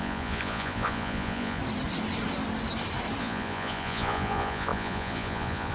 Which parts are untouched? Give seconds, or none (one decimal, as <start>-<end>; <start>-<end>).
1.6-3.2